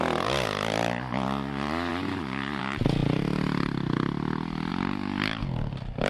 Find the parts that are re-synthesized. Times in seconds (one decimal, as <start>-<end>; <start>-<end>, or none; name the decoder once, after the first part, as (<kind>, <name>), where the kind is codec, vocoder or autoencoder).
none

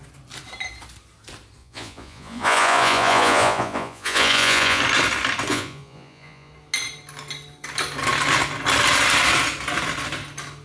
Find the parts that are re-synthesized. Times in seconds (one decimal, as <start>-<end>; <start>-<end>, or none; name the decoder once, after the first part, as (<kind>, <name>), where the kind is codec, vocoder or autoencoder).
1.6-4.8 (vocoder, Vocos); 5.5-6.5

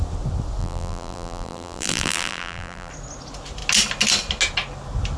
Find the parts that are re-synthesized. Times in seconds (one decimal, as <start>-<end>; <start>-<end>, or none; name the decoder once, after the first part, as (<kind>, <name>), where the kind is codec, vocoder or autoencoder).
0.6-2.9 (vocoder, BigVGAN v2)

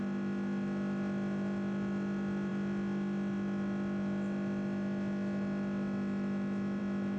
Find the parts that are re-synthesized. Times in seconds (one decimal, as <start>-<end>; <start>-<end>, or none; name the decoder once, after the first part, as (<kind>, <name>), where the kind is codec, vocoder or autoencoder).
none

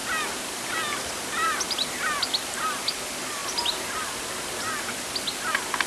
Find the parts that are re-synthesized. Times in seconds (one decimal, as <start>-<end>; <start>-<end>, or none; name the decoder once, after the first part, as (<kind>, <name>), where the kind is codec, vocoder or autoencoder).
none